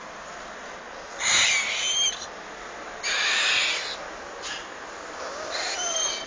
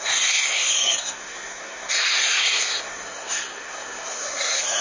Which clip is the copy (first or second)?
second